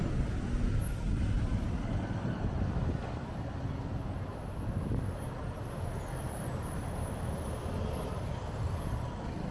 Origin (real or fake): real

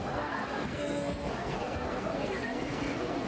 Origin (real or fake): fake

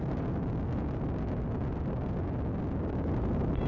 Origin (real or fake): real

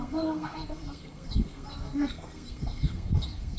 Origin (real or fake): fake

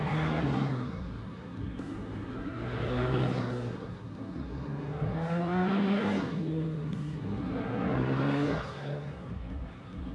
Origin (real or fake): fake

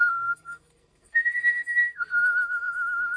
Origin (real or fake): fake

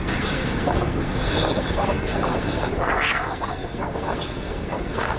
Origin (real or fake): fake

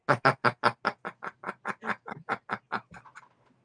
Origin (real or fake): real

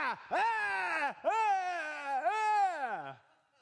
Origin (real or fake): real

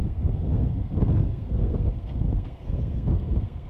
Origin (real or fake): fake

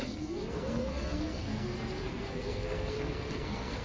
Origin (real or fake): fake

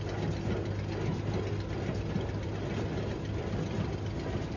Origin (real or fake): real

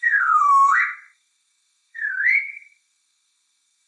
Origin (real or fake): fake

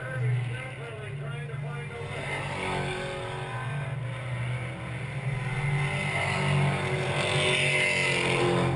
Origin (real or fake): real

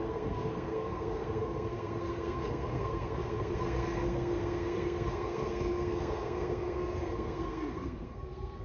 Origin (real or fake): fake